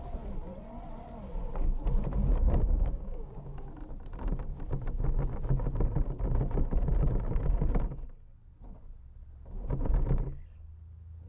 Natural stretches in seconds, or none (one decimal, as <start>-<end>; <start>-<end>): 0.0-2.8; 3.8-11.3